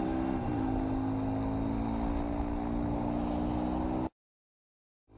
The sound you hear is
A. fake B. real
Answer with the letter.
B